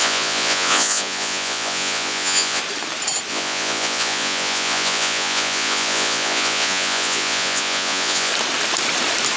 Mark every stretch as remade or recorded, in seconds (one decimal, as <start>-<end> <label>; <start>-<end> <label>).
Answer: 0.0-2.6 remade; 2.6-3.3 recorded; 3.3-8.3 remade; 8.3-9.4 recorded